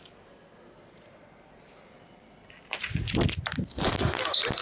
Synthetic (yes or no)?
no